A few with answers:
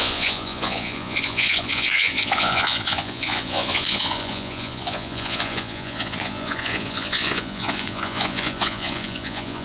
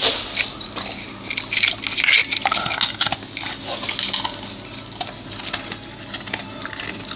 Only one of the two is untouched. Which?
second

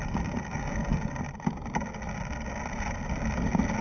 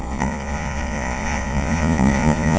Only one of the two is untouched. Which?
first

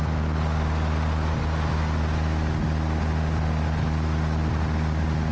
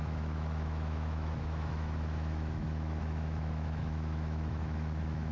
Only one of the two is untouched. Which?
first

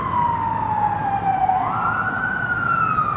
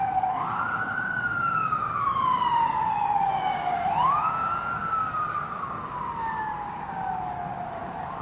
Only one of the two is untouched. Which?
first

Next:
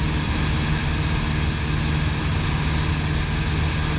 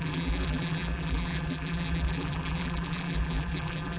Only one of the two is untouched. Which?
first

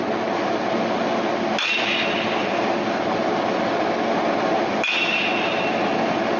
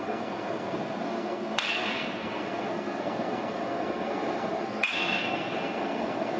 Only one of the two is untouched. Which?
first